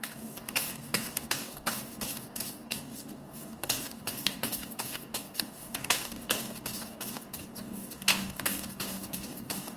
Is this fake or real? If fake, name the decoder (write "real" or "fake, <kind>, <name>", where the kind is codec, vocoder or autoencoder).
fake, codec, DAC